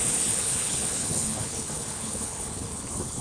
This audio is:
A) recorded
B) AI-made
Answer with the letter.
B